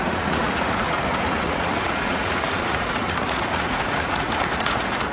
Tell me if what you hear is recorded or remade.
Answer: remade